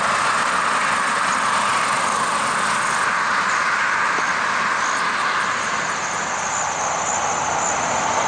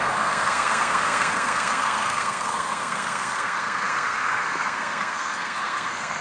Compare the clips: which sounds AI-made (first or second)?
second